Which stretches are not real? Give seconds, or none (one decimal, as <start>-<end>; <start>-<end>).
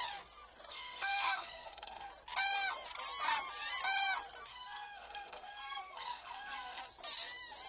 0.7-2.1; 4.5-6.8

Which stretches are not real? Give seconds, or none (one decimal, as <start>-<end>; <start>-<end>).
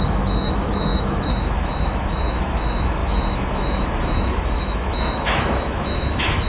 0.0-6.5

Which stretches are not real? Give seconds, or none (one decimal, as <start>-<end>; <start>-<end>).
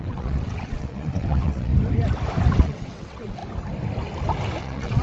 0.0-1.7; 2.6-3.4; 4.6-5.0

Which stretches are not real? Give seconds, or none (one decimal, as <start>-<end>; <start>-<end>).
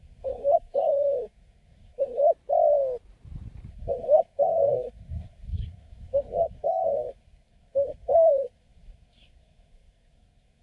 0.0-2.2; 3.7-10.6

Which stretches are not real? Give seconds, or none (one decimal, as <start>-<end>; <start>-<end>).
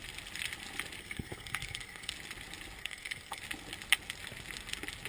1.0-2.1; 2.8-3.4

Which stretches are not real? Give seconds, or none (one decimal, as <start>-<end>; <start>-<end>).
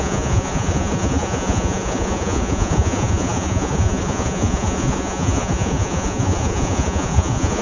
0.0-7.6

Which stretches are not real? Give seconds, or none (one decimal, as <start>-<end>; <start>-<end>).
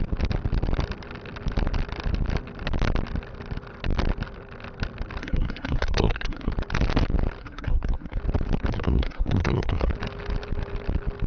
5.2-6.5; 7.4-8.2; 8.7-9.9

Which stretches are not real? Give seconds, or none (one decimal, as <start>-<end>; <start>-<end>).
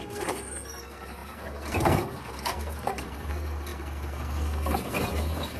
0.0-5.6